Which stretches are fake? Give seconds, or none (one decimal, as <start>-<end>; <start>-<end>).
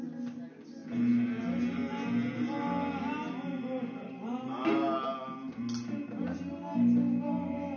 none